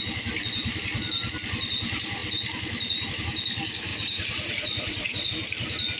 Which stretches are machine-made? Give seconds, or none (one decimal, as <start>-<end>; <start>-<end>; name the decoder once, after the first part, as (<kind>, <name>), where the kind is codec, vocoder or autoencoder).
3.9-5.3 (vocoder, Vocos)